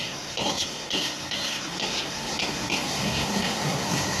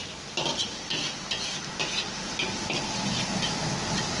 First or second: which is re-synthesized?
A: first